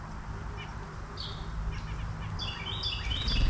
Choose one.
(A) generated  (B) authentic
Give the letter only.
B